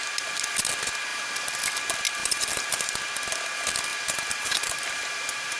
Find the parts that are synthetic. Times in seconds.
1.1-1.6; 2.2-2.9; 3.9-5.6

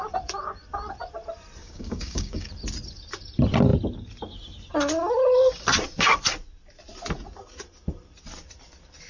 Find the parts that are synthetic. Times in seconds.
1.6-2.5

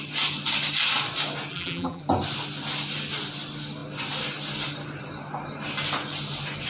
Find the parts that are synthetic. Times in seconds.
1.5-2.0